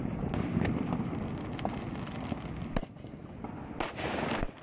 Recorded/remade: recorded